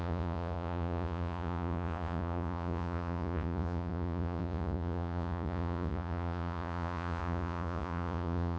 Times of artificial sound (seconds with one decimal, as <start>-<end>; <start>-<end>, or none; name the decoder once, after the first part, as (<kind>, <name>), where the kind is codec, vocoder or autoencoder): 0.0-8.6 (vocoder, Vocos)